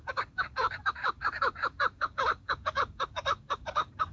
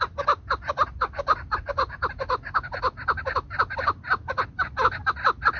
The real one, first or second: second